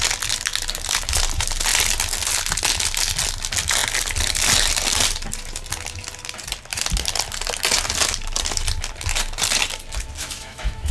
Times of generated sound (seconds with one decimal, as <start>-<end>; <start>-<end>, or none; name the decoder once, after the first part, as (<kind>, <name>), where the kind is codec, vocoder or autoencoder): 10.2-10.9 (autoencoder, DAC-VAE)

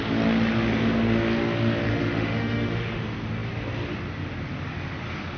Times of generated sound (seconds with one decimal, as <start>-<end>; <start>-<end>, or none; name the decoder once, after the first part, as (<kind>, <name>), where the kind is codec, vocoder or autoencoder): 1.9-3.0 (autoencoder, DAC-VAE)

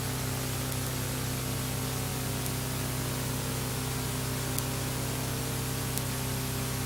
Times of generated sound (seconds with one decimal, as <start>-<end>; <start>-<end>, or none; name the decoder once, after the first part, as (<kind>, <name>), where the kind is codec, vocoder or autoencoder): none

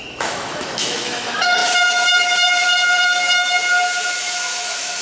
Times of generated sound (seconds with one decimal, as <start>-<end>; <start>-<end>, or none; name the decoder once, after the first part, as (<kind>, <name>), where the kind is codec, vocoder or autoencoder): 0.0-5.0 (autoencoder, DAC-VAE)

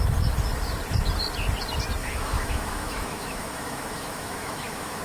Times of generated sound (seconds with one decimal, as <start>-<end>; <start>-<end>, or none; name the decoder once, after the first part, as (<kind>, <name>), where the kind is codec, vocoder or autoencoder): 2.0-5.0 (autoencoder, DAC-VAE)

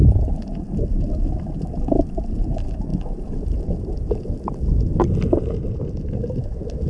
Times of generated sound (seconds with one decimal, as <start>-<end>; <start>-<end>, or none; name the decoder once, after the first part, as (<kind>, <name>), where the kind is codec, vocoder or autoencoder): none

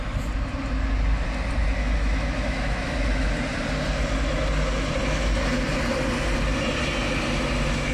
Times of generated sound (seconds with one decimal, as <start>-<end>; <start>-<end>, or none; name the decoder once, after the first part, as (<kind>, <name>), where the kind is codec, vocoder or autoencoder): 1.8-3.3 (autoencoder, DAC-VAE)